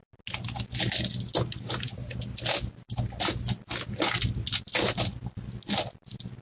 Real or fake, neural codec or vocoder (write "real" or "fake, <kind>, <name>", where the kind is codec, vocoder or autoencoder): real